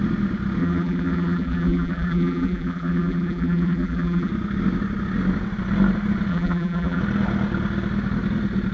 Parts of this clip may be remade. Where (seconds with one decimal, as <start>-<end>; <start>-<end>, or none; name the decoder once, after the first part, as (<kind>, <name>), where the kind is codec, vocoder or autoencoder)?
0.6-4.3 (vocoder, BigVGAN v2); 6.3-7.0

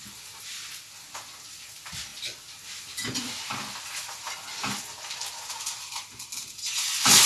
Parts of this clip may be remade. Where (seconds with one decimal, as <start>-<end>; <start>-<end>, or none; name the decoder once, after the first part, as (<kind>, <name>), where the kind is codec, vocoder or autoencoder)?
none

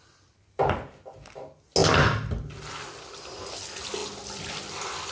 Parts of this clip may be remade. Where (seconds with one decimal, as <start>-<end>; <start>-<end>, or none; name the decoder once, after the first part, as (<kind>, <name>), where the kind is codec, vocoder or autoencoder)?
none